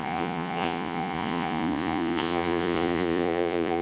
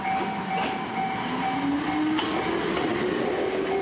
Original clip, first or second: second